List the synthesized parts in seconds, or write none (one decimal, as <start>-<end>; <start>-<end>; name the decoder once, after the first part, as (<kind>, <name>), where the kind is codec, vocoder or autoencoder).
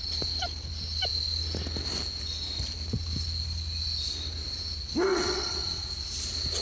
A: 5.1-5.8 (vocoder, WaveNeXt)